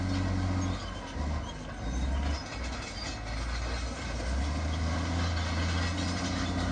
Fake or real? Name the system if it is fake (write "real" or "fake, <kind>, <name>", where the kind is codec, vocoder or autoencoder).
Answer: real